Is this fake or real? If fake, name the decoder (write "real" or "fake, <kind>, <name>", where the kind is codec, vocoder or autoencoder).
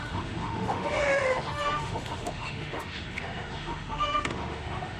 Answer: fake, autoencoder, DAC-VAE